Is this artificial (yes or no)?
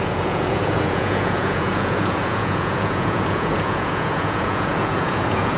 yes